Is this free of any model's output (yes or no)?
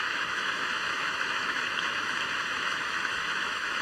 no